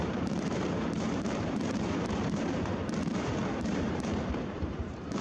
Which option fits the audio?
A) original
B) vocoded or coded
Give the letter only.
B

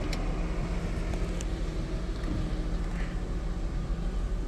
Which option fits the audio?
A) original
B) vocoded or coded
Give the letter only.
A